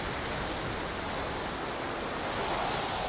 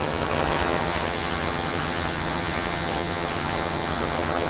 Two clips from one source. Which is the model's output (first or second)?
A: second